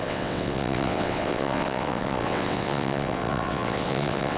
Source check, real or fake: fake